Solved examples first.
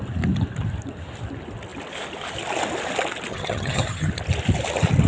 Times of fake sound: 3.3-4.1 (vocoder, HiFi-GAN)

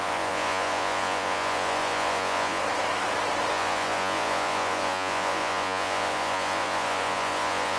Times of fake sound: 0.0-2.6 (vocoder, Vocos); 3.5-7.8

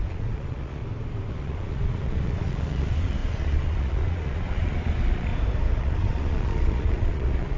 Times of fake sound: 0.0-0.8 (vocoder, Vocos); 1.3-5.3; 5.8-7.6

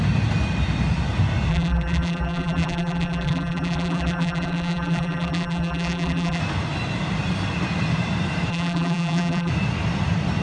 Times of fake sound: 1.5-6.4 (vocoder, BigVGAN v2); 8.5-9.5

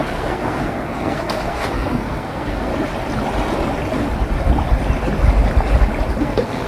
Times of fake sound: 0.0-2.7 (codec, SNAC); 6.2-6.7

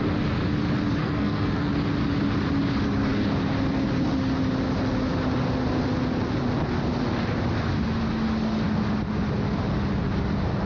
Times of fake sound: 1.0-1.7 (codec, SNAC)

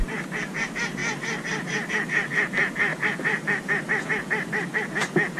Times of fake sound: 2.9-4.1 (vocoder, BigVGAN v2)